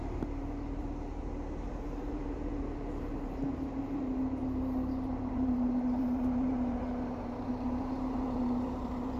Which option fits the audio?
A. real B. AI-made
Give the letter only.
B